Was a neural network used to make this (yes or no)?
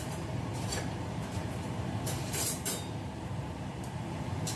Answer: yes